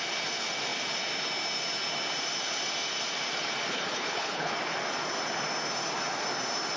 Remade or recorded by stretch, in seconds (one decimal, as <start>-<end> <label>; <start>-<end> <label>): 0.0-3.7 recorded; 3.7-4.5 remade; 4.5-6.8 recorded